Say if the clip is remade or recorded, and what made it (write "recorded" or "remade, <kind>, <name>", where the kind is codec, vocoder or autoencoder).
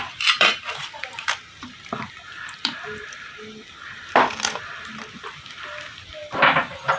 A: remade, vocoder, BigVGAN v2